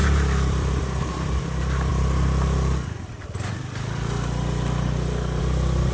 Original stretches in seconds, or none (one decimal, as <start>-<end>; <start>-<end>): 1.4-5.9